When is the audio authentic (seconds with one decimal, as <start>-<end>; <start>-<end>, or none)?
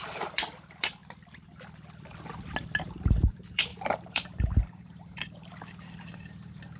1.0-3.3